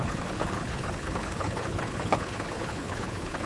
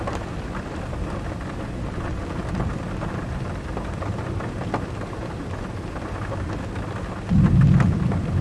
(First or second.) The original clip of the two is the second